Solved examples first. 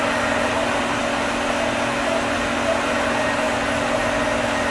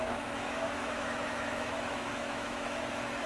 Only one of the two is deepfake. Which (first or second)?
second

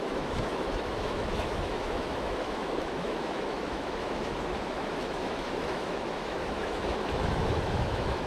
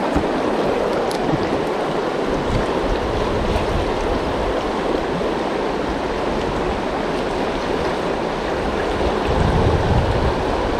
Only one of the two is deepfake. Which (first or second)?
first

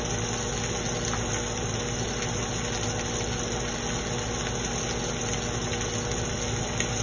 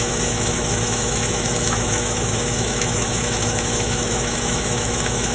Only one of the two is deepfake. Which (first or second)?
second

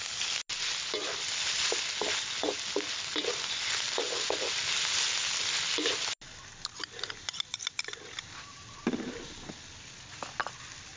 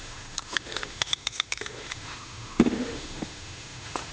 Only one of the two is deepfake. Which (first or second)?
second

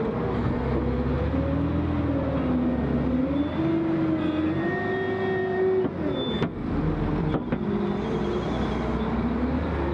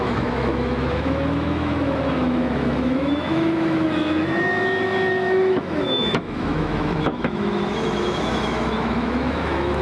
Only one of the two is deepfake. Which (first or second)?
second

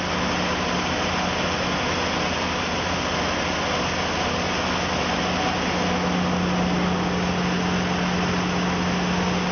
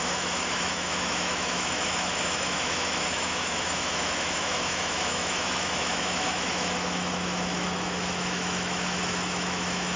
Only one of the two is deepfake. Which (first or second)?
second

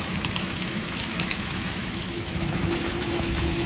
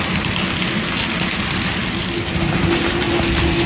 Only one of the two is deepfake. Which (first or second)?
first